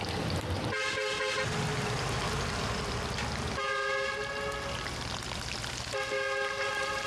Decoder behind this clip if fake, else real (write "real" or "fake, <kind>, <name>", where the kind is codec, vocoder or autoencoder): real